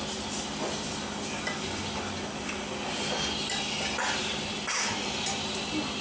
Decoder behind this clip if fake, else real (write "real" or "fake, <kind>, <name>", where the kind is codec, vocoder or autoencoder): real